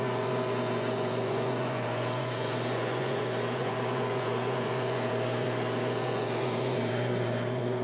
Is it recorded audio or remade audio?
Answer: remade